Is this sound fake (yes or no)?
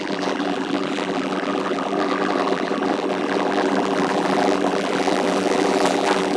yes